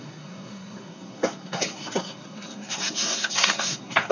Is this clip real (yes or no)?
no